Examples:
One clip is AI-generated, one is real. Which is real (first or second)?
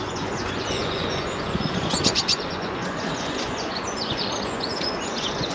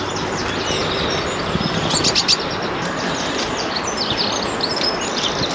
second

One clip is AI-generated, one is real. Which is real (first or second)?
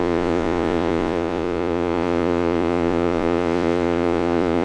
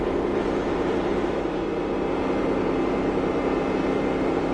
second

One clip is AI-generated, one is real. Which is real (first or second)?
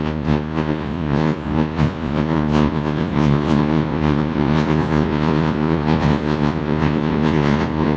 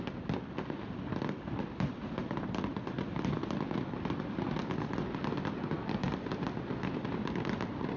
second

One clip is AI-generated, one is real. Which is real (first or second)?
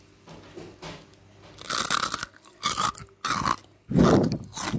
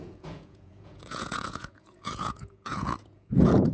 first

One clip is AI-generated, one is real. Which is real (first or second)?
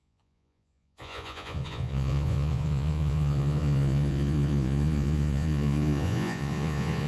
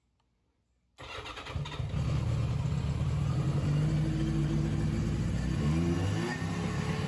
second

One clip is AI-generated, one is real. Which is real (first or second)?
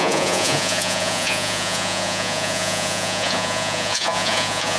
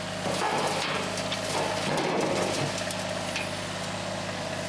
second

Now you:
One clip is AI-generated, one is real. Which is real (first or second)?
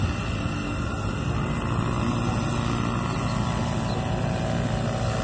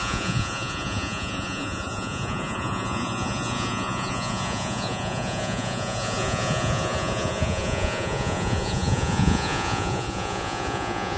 first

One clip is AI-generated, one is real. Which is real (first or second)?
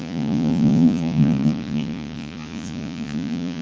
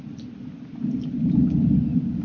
second